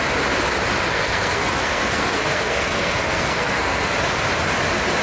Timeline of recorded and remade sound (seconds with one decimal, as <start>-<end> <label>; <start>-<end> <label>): 0.0-0.9 recorded; 0.9-3.9 remade; 3.9-5.0 recorded